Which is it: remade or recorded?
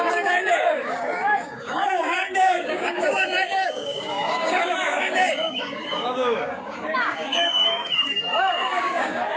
remade